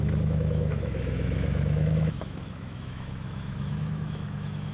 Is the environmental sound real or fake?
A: fake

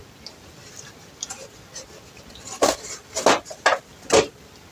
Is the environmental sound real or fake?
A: real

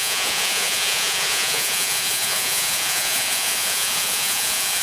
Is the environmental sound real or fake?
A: fake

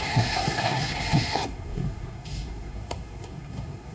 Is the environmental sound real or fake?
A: fake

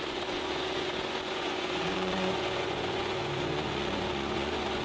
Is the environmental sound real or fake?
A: fake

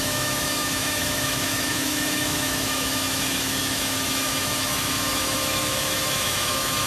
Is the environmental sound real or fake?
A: fake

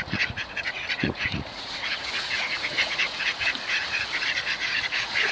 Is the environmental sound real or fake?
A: fake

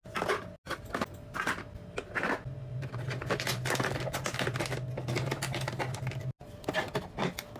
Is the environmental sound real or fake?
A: real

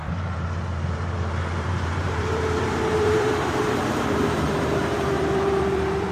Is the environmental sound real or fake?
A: fake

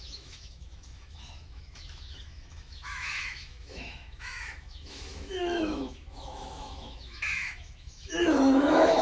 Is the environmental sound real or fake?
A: fake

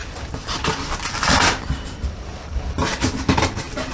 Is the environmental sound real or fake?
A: real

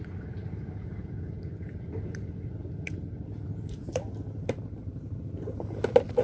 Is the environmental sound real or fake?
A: real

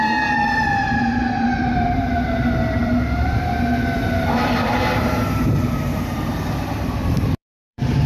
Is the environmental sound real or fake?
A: fake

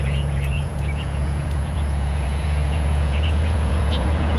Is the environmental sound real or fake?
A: fake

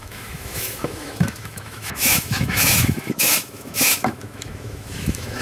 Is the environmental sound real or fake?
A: fake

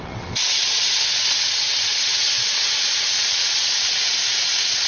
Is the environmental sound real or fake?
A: fake